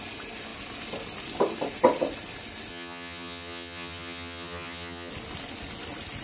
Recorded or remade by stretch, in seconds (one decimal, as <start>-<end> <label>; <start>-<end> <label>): 0.0-2.7 recorded; 2.7-5.1 remade; 5.1-6.2 recorded